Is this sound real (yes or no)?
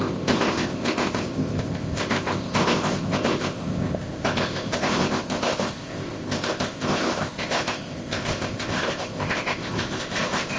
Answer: no